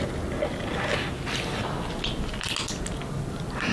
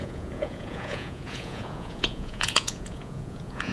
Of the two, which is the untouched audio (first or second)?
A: first